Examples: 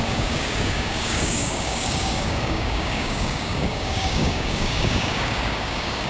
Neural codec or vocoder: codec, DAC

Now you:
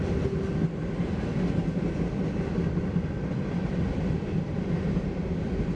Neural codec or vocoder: none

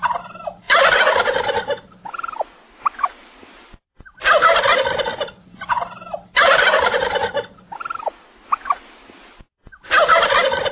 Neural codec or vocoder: none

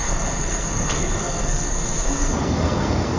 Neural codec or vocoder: codec, SNAC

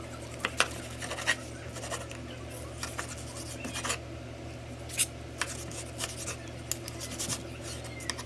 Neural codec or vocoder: none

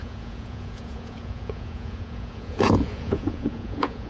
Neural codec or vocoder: vocoder, Vocos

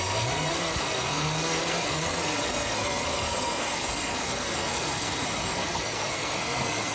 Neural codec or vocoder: codec, SNAC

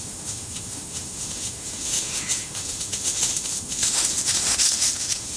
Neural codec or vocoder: autoencoder, DAC-VAE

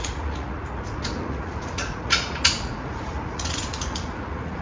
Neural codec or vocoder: vocoder, Vocos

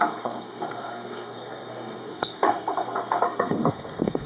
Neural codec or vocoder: codec, SNAC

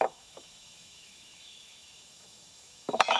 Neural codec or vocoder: autoencoder, DAC-VAE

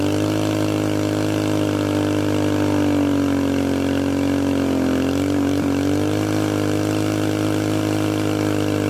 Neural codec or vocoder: none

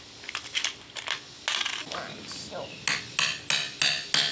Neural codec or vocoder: none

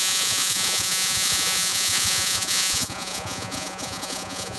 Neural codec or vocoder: vocoder, Vocos